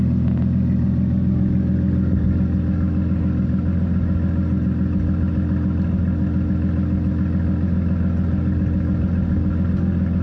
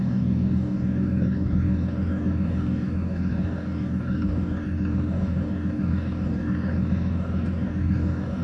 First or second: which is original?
first